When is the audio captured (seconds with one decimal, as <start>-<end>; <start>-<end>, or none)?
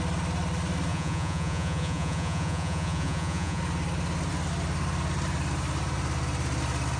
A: 0.0-0.9; 3.6-7.0